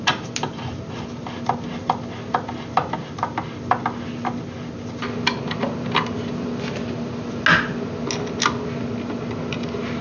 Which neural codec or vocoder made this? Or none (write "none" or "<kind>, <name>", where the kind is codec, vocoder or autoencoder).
none